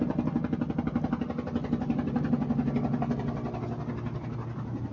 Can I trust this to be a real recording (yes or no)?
yes